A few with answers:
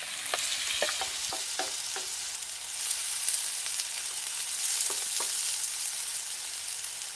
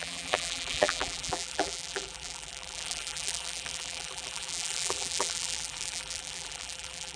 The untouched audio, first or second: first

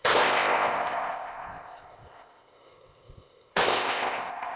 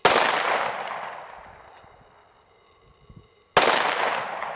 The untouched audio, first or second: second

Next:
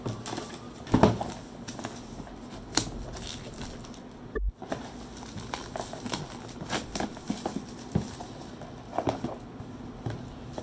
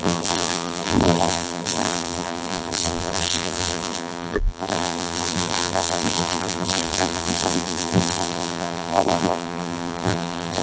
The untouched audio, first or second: first